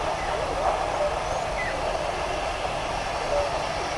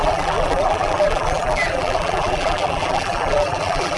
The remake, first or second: second